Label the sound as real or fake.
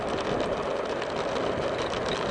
real